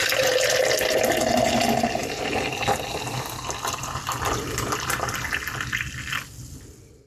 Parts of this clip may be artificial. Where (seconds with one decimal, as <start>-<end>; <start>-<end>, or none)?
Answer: none

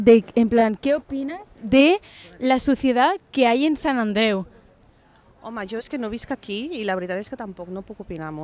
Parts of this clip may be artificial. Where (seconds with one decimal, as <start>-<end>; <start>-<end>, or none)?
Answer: 1.8-3.2

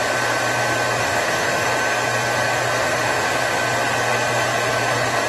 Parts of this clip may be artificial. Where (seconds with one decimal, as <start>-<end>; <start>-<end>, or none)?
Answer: 1.0-1.7; 2.8-3.6

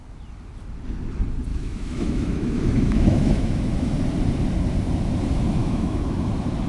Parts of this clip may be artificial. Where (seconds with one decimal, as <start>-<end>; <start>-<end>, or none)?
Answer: 1.5-3.9; 5.6-6.3